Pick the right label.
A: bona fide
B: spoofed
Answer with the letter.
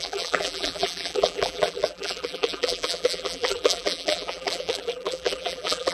B